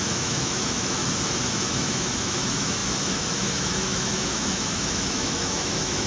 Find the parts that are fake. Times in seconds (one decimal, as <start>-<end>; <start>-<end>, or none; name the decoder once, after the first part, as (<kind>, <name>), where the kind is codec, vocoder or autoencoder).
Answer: 0.0-1.0 (autoencoder, DAC-VAE); 1.5-6.1

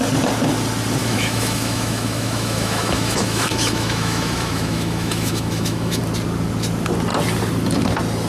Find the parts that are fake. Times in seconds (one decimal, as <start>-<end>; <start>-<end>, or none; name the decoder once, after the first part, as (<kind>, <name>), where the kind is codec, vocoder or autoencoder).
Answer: 1.0-6.0 (autoencoder, DAC-VAE)

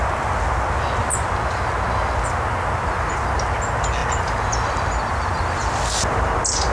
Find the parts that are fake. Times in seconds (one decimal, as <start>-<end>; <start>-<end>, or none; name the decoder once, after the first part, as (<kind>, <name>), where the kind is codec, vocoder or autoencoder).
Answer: none

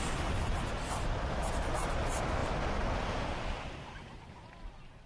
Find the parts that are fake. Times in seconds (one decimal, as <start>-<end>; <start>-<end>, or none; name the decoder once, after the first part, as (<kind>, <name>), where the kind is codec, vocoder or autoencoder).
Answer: none

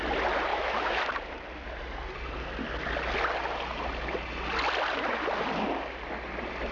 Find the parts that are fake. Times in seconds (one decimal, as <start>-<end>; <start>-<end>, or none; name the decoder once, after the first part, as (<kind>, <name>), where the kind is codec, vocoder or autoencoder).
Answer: 0.5-1.0 (autoencoder, DAC-VAE)

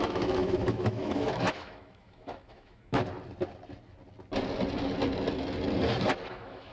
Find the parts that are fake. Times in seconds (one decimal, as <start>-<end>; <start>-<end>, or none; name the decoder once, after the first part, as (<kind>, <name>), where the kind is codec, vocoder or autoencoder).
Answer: 0.0-3.0 (autoencoder, DAC-VAE); 6.3-6.7